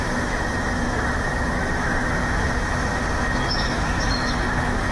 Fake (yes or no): yes